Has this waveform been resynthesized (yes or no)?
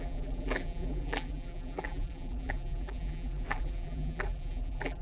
yes